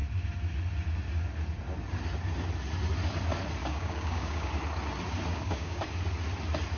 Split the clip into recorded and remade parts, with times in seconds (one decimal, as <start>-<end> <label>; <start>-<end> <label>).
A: 0.0-3.6 recorded; 3.6-4.5 remade; 4.5-5.3 recorded; 5.3-5.8 remade; 5.8-6.8 recorded